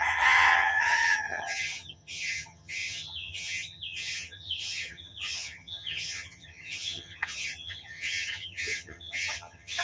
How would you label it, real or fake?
fake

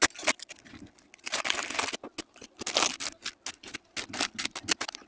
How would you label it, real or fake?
real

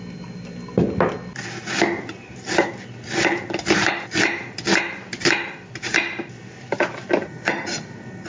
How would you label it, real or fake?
real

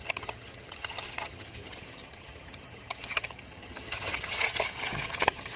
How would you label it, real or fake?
fake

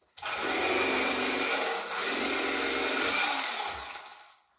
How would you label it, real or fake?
real